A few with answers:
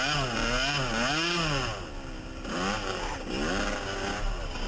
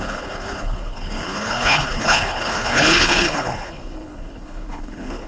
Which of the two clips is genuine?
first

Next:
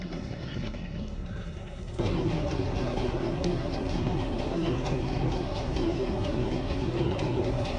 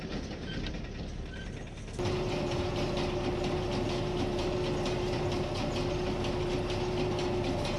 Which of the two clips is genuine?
second